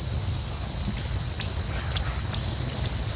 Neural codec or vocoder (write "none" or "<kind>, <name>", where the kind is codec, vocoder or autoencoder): none